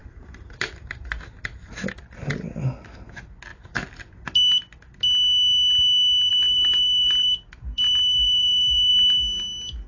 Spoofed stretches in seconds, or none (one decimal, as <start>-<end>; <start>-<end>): 0.0-2.2; 3.5-4.1; 6.3-8.9